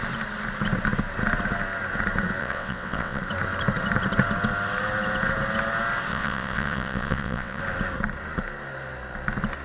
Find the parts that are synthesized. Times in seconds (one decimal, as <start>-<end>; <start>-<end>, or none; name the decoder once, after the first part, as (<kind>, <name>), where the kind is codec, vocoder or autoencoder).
2.4-3.2 (vocoder, WaveNeXt); 6.1-7.6

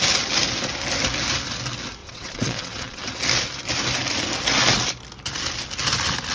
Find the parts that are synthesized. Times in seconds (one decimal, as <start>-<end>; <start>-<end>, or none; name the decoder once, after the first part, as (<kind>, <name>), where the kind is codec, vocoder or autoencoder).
2.0-3.2 (vocoder, WaveNeXt)

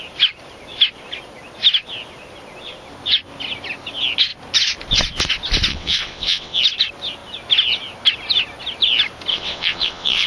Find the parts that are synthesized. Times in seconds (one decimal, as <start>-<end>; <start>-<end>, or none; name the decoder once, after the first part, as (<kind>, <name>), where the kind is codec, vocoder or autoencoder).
5.7-6.6 (vocoder, WaveNeXt); 9.3-10.3

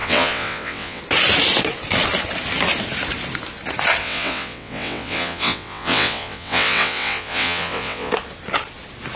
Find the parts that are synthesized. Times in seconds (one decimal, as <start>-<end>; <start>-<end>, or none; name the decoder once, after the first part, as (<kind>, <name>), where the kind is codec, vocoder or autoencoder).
0.0-1.0 (vocoder, WaveNeXt); 4.0-8.1